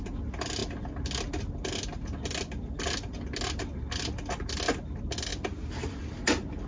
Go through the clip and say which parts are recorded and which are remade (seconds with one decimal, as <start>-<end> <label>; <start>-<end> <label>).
0.0-6.7 recorded

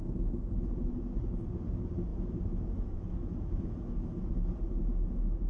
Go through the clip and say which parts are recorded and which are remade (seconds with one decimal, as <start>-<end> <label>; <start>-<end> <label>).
0.0-2.1 recorded; 2.1-4.3 remade; 4.3-5.5 recorded

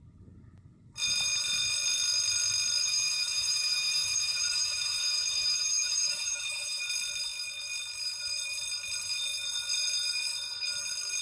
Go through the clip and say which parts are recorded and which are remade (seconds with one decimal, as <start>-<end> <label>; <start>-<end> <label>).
0.0-2.8 recorded; 2.8-6.8 remade; 6.8-11.2 recorded

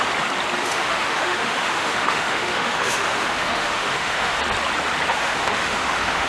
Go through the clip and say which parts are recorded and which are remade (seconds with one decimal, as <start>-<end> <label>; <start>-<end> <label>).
0.0-0.6 recorded; 0.6-4.4 remade; 4.4-5.1 recorded; 5.1-6.3 remade

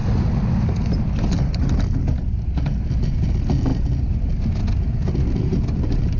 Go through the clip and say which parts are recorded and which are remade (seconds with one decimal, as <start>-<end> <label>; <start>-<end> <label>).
0.0-6.2 recorded

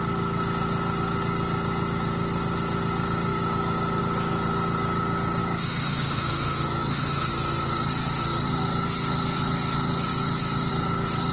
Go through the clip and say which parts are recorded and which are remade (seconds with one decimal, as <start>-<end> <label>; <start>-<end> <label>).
0.0-3.3 recorded; 3.3-4.0 remade; 4.0-5.4 recorded; 5.4-7.3 remade; 7.3-11.3 recorded

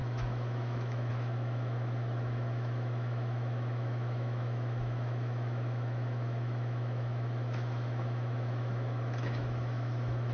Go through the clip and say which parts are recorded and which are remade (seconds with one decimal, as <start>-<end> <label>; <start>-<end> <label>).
0.0-10.3 remade

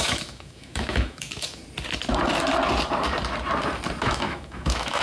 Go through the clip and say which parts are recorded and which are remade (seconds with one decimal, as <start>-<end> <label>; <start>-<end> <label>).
0.0-1.6 remade; 1.6-4.0 recorded; 4.0-5.0 remade